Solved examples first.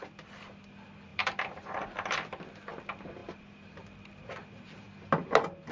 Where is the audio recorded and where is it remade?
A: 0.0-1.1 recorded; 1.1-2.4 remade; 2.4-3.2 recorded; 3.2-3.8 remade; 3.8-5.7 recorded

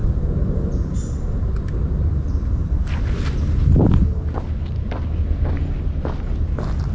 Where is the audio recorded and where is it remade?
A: 0.0-6.9 recorded

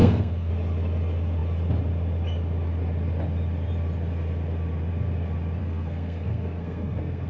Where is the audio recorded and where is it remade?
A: 0.0-0.5 remade; 0.5-5.6 recorded; 5.6-7.3 remade

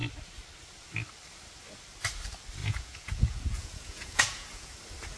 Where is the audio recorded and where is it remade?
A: 0.0-2.6 recorded; 2.6-4.7 remade; 4.7-5.2 recorded

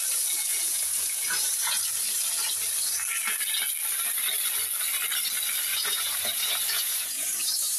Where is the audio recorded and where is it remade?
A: 0.0-0.5 recorded; 0.5-1.8 remade; 1.8-5.7 recorded; 5.7-7.8 remade

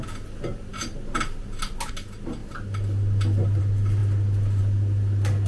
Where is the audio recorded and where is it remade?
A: 0.0-5.5 recorded